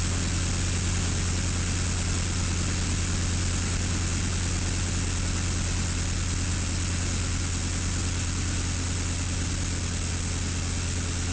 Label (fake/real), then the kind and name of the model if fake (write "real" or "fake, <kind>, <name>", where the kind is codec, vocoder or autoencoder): real